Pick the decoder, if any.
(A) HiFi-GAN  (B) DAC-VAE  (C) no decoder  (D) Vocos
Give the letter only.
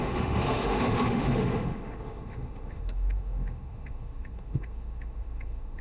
B